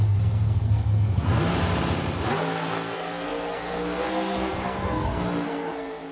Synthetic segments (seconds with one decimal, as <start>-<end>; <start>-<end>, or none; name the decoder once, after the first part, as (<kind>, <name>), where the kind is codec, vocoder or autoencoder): 0.0-1.3 (codec, SNAC); 2.3-6.1